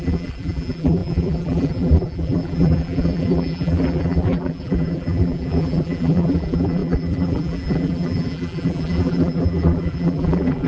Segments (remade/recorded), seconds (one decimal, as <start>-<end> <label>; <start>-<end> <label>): 0.0-10.7 remade